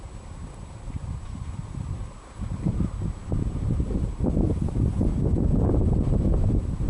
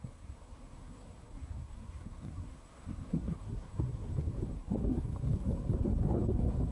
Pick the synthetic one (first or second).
second